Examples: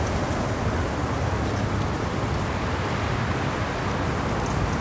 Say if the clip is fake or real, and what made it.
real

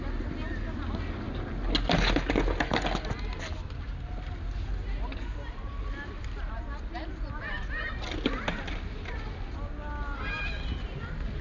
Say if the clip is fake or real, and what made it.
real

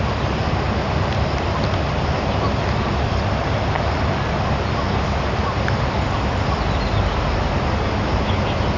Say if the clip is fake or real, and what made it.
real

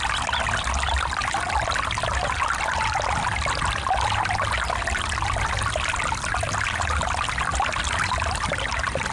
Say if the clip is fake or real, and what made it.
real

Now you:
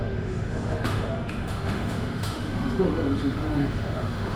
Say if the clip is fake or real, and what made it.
fake, autoencoder, DAC-VAE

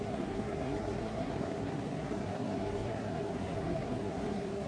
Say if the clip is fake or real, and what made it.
fake, codec, SNAC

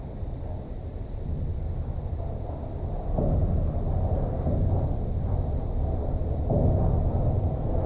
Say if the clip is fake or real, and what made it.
real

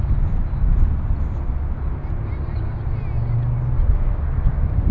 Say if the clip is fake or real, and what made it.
real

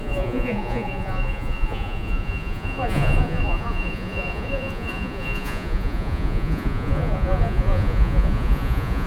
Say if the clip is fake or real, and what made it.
fake, vocoder, Vocos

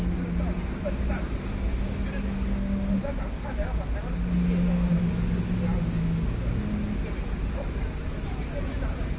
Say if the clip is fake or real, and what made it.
real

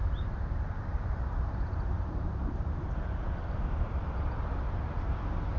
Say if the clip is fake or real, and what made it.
fake, vocoder, BigVGAN v2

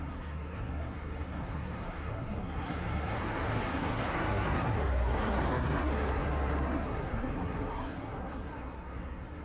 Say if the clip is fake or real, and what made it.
fake, codec, SNAC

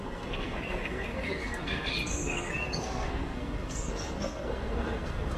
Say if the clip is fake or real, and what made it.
fake, codec, SNAC